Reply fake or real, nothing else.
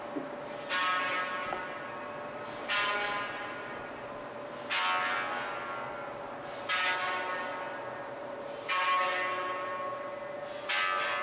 real